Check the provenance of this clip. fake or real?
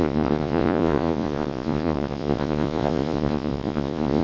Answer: fake